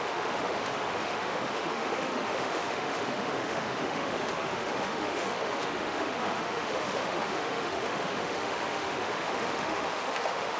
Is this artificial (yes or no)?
yes